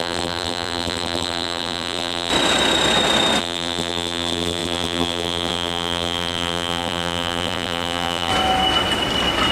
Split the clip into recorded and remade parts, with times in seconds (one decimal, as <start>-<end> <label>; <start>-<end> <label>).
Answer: 0.0-2.3 remade; 2.3-3.4 recorded; 3.4-8.3 remade; 8.3-9.5 recorded